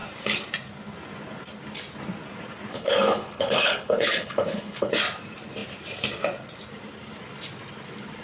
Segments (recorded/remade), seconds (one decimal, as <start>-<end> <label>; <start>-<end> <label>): 0.0-2.7 recorded; 2.7-4.9 remade; 4.9-8.2 recorded